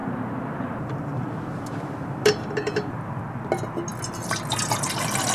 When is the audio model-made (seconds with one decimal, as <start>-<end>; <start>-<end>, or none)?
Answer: 0.0-3.2